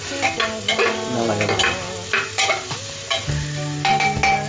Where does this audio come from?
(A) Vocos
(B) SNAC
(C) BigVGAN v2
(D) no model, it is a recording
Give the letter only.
D